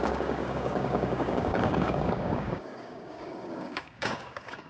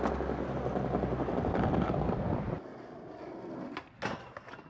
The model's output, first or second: first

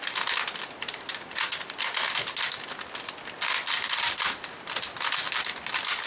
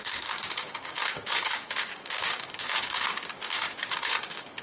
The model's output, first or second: second